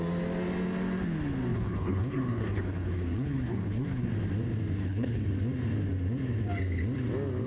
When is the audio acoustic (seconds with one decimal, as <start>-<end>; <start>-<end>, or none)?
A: 0.0-1.5; 4.1-4.8; 5.3-7.5